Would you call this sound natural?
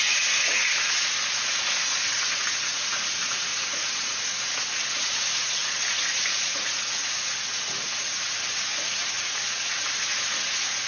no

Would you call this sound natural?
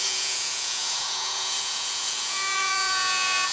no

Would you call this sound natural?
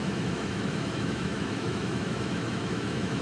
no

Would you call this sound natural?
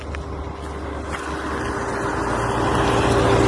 yes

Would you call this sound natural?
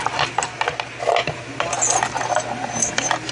yes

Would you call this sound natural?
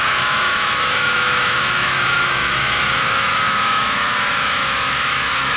no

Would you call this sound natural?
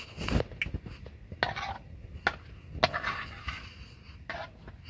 yes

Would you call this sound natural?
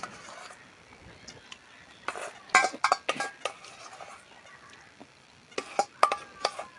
yes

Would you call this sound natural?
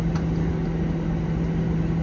yes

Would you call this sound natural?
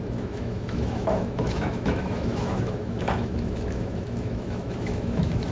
no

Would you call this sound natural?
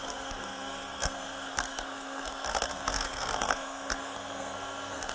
no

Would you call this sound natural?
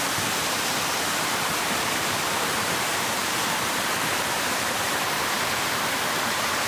no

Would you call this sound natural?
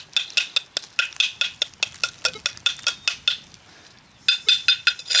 yes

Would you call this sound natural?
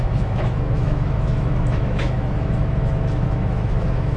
no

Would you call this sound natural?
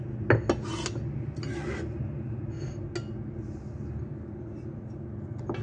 yes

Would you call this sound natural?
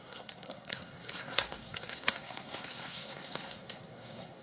no